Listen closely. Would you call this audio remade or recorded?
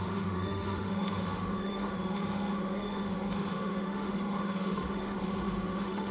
remade